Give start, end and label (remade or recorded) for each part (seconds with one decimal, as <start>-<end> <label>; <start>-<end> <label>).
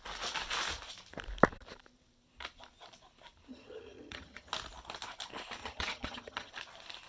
0.0-3.5 recorded; 3.5-4.5 remade; 4.5-5.6 recorded; 5.6-6.5 remade; 6.5-7.1 recorded